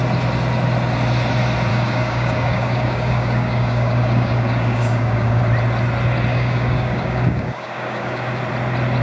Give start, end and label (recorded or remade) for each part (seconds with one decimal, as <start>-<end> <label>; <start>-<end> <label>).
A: 0.0-1.7 recorded; 1.7-5.4 remade; 5.4-6.3 recorded; 6.3-8.4 remade; 8.4-9.0 recorded